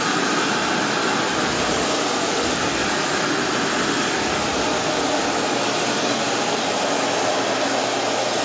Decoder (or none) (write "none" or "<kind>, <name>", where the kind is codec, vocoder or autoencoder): none